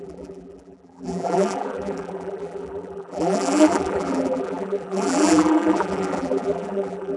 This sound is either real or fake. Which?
fake